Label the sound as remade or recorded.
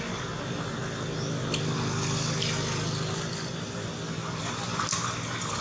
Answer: recorded